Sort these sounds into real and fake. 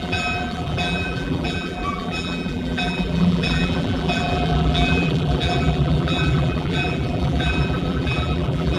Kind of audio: fake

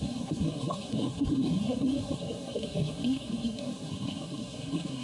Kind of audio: fake